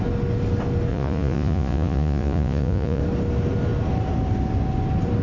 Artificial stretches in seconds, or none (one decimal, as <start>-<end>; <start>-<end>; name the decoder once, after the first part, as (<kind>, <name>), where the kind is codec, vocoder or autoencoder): 0.9-3.0 (vocoder, Vocos)